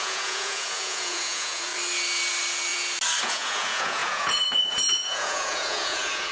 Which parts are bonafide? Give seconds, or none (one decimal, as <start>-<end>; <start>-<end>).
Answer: 1.7-3.2